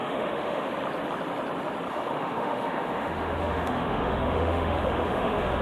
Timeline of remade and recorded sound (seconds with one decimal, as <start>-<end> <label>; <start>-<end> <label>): 0.0-0.7 remade; 0.7-1.9 recorded; 1.9-5.6 remade